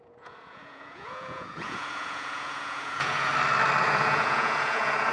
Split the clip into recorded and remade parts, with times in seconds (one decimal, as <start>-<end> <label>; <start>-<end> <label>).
0.0-3.3 remade; 3.3-3.8 recorded; 3.8-5.1 remade